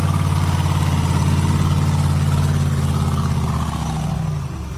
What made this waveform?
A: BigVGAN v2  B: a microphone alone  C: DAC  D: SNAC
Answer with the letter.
B